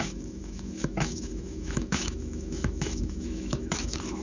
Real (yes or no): no